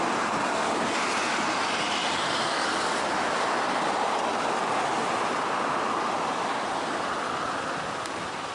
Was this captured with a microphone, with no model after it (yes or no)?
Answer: yes